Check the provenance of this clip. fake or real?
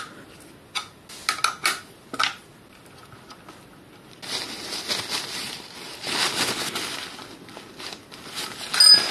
real